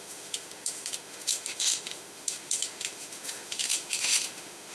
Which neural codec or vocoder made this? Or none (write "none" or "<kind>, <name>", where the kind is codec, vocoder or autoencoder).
autoencoder, DAC-VAE